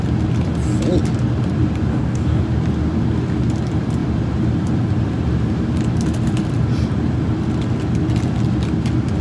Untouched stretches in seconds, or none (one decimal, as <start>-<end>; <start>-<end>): 0.0-1.9; 2.4-9.2